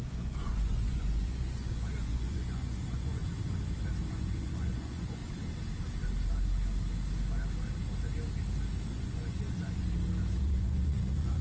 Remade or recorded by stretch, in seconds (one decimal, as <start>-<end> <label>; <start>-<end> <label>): 0.0-3.2 remade; 3.2-4.1 recorded; 4.1-5.2 remade; 5.2-8.9 recorded; 8.9-9.8 remade; 9.8-10.4 recorded; 10.4-11.4 remade